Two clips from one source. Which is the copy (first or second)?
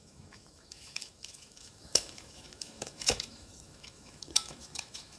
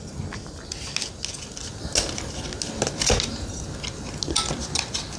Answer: first